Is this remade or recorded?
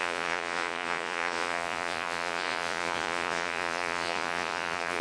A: remade